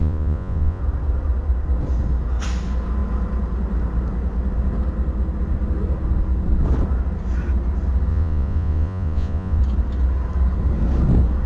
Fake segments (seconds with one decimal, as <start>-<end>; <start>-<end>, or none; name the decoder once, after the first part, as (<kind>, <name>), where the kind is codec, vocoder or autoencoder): 0.0-0.8 (vocoder, Vocos); 8.1-9.6